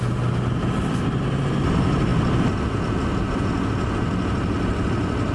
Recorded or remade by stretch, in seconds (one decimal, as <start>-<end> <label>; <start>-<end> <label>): 0.0-5.3 recorded